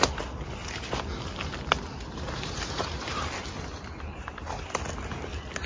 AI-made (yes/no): no